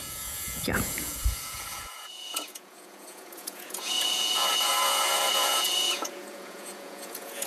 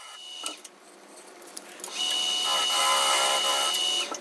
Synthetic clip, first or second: first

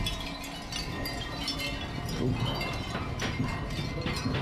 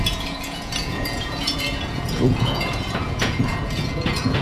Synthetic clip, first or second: second